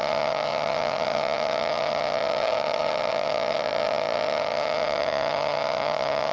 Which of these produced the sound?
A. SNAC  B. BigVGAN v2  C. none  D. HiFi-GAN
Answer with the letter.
D